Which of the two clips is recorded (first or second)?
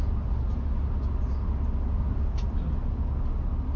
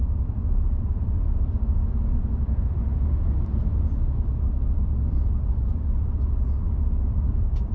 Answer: first